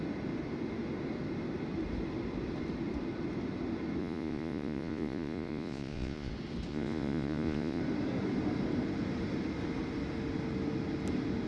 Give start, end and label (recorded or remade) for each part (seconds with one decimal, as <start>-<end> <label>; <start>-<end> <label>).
0.0-4.0 recorded; 4.0-6.3 remade; 6.3-6.7 recorded; 6.7-7.8 remade; 7.8-11.5 recorded